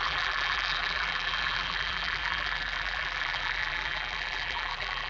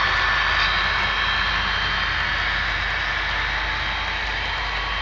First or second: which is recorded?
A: second